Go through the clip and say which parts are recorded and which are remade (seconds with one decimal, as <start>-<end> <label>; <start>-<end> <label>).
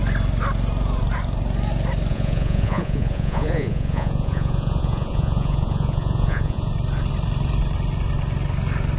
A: 0.0-2.1 recorded; 2.1-6.7 remade; 6.7-9.0 recorded